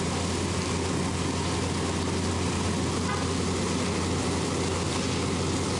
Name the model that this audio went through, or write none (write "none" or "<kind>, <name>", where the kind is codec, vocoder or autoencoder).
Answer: none